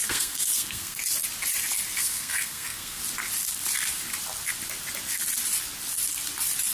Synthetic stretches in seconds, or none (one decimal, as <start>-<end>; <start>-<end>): 0.0-1.0; 2.0-3.0

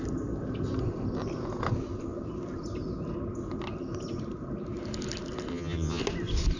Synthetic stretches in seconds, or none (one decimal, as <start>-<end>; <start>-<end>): 5.5-6.0

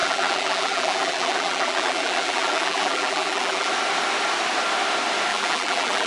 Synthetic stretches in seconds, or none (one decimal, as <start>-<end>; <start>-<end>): 0.0-3.7; 5.3-6.1

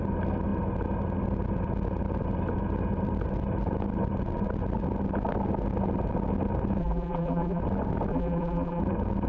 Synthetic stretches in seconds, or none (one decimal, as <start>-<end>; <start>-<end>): 6.8-7.6; 8.1-8.8

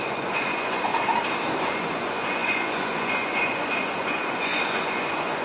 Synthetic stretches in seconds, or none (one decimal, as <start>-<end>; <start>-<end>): 0.0-0.9; 1.6-5.4

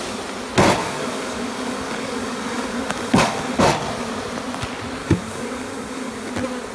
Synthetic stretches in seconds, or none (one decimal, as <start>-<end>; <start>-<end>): 0.8-3.6; 5.0-6.3

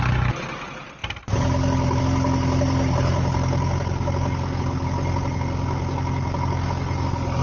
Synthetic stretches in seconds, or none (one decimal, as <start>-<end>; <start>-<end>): none

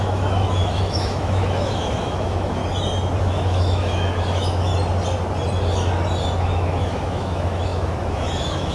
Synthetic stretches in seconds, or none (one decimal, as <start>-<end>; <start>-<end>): 0.0-2.6; 3.2-4.7; 6.4-8.7